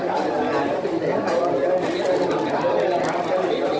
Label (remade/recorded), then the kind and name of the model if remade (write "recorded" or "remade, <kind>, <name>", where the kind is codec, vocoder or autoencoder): recorded